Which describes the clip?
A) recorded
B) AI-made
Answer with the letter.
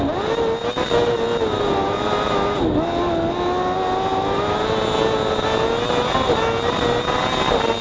A